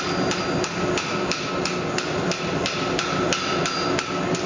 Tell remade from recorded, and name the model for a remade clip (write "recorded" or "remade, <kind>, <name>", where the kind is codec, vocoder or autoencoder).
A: recorded